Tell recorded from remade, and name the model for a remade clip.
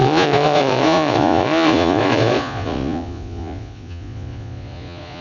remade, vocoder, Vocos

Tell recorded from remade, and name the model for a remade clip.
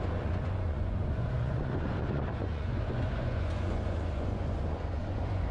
remade, vocoder, Vocos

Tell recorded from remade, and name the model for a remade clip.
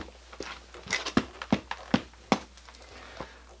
recorded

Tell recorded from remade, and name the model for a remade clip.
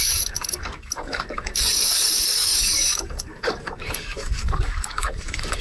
remade, codec, DAC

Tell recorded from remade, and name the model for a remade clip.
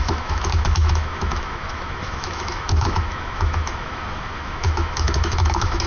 remade, autoencoder, DAC-VAE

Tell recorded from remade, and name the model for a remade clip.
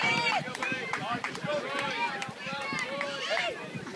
remade, vocoder, BigVGAN v2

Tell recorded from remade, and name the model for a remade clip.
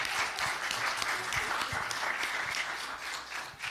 recorded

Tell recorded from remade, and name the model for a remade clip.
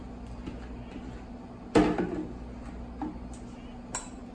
recorded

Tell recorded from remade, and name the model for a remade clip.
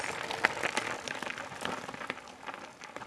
recorded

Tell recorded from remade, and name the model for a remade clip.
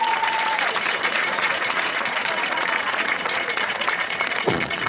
remade, vocoder, Vocos